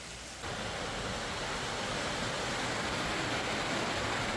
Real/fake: real